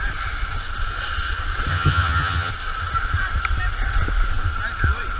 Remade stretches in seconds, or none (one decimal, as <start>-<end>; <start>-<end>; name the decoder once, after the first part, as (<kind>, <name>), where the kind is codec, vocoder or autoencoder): 1.7-2.5 (vocoder, HiFi-GAN)